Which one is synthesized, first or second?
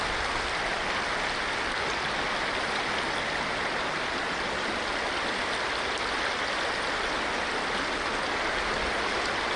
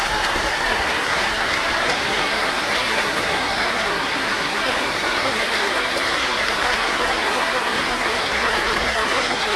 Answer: second